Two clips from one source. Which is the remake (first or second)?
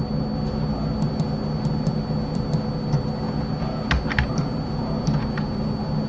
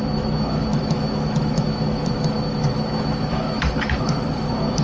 second